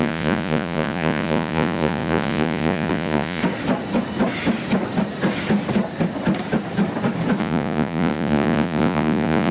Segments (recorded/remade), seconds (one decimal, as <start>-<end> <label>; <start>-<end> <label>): 0.0-3.4 remade; 3.4-7.4 recorded; 7.4-9.5 remade